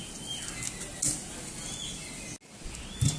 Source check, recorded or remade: recorded